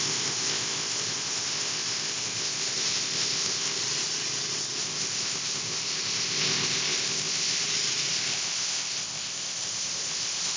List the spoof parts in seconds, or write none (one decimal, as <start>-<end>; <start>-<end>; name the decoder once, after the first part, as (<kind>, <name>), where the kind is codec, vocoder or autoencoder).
0.0-3.8 (codec, ZipCodec); 4.8-7.6; 8.1-10.6

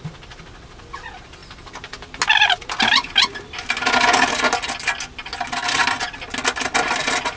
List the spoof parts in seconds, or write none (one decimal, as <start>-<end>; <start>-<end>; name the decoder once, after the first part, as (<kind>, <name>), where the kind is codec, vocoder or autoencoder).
none